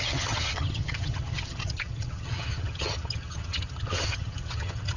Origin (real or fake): fake